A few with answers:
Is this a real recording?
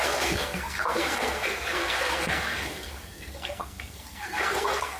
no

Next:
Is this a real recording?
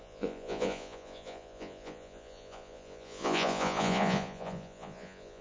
no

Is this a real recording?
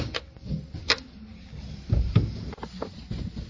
yes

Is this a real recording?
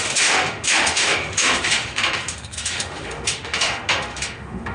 no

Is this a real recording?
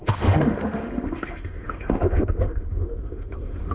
no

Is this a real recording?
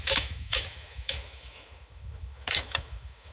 no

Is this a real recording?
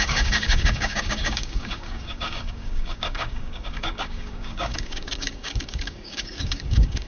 no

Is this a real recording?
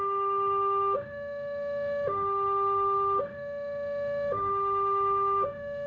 no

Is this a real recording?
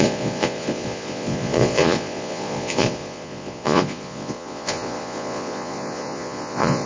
no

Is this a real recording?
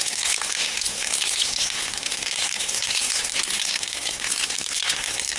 no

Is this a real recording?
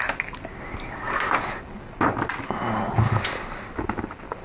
yes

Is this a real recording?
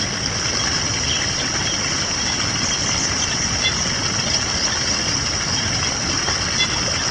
yes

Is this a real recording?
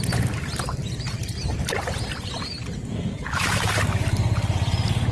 yes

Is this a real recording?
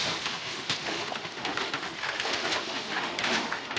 no